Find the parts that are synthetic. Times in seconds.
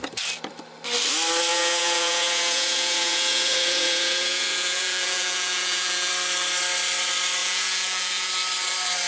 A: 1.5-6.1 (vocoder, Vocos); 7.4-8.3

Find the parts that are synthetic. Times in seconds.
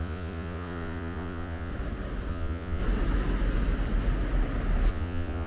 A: 0.0-1.7 (vocoder, Vocos); 2.3-2.8; 4.9-5.5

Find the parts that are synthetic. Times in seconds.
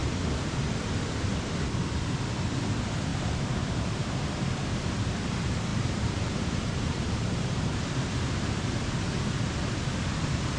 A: 3.1-4.3 (vocoder, BigVGAN v2); 5.7-8.5